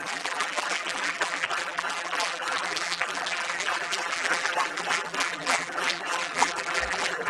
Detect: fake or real fake